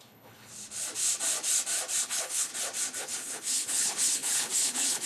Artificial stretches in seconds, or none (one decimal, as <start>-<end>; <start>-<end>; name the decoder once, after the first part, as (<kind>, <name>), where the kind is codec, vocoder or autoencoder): 0.0-0.5 (codec, HILCodec); 2.0-2.5; 3.0-5.1